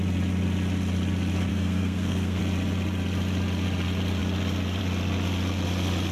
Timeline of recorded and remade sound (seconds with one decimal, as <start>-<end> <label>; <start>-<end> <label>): 0.0-1.5 recorded; 1.5-2.4 remade; 2.4-6.1 recorded